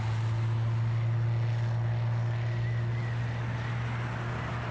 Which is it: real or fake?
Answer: real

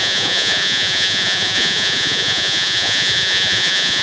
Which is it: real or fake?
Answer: fake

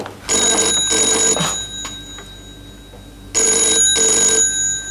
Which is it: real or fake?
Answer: real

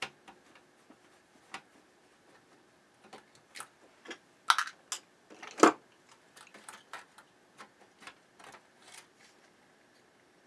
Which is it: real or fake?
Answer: real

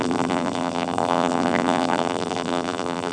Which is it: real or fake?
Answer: fake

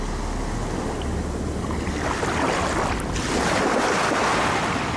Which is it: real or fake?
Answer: real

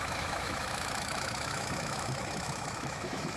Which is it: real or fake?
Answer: fake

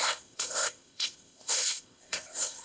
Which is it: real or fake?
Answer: fake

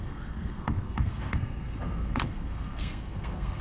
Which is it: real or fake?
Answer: fake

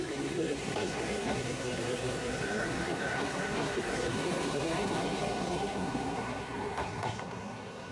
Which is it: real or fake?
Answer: fake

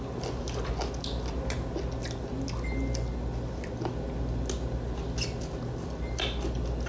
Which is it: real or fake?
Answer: real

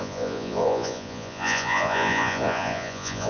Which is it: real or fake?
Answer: fake